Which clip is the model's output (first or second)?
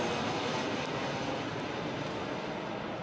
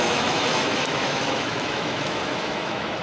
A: second